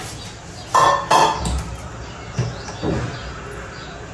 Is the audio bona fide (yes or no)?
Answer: yes